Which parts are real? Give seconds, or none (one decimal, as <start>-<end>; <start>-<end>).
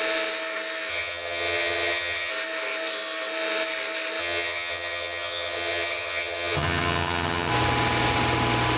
0.0-0.9; 2.3-4.2; 7.5-8.8